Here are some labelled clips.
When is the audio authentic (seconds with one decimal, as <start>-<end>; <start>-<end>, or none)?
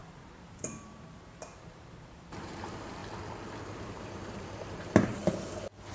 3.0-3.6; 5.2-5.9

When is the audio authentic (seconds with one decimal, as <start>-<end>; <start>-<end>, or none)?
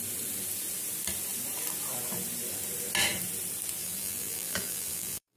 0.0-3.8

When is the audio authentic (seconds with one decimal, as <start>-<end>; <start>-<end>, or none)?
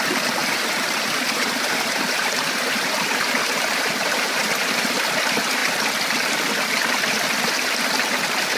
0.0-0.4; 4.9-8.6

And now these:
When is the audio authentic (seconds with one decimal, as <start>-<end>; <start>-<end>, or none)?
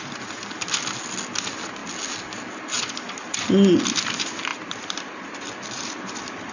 0.0-4.5; 6.0-6.5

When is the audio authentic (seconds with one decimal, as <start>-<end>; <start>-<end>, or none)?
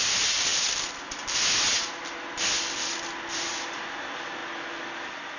0.0-5.4